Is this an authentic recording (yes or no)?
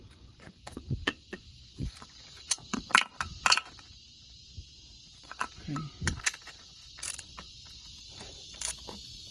no